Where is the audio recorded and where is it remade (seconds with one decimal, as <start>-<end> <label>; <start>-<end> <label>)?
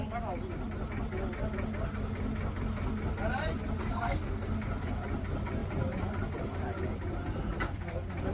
0.0-3.8 recorded; 3.8-4.5 remade; 4.5-8.3 recorded